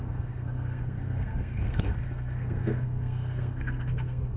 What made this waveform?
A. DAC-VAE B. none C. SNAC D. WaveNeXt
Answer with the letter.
C